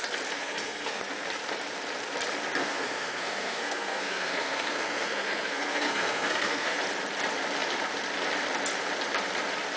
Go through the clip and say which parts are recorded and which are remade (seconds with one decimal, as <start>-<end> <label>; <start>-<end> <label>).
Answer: 0.0-0.4 recorded; 0.4-1.0 remade; 1.0-2.6 recorded; 2.6-6.8 remade; 6.8-9.8 recorded